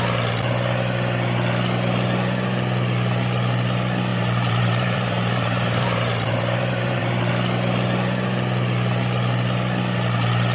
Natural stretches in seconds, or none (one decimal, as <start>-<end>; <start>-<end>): 0.0-4.1; 7.3-10.5